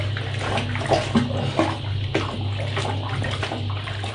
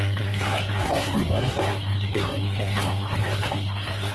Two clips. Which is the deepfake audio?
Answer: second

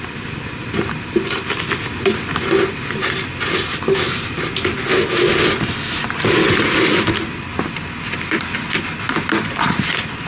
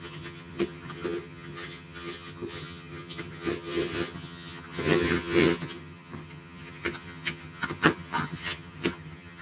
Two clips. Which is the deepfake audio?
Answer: second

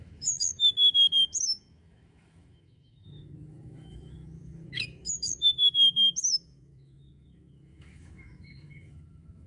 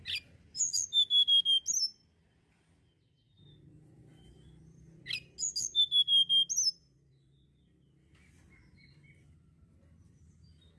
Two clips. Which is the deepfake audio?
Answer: first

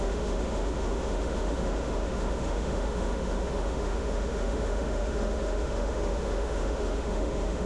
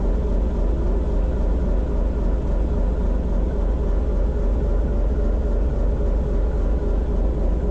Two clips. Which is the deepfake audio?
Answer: first